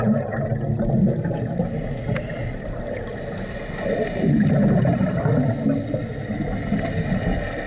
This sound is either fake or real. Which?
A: real